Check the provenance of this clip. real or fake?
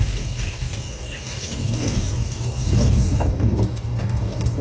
fake